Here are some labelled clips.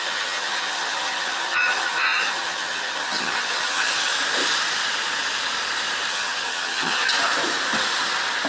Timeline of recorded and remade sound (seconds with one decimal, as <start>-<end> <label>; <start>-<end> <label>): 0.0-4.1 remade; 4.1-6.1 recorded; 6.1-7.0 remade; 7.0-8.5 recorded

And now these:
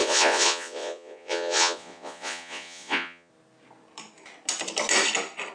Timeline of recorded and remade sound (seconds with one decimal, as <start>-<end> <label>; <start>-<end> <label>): 0.0-3.3 remade; 3.3-5.5 recorded

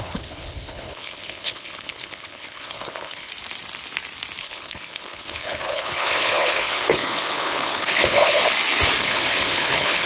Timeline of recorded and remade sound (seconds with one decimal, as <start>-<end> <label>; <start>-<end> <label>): 0.0-3.3 remade; 3.3-4.4 recorded; 4.4-8.4 remade; 8.4-9.0 recorded; 9.0-10.1 remade

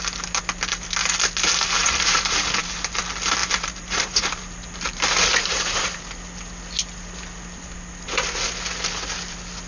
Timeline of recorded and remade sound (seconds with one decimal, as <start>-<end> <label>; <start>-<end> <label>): 0.0-1.8 recorded; 1.8-3.0 remade; 3.0-3.4 recorded; 3.4-6.0 remade; 6.0-9.7 recorded